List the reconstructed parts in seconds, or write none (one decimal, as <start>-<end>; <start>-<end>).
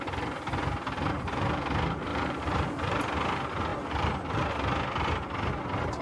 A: 2.1-3.0; 3.7-4.5